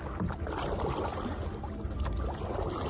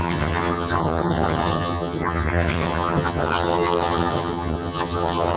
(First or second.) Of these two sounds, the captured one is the first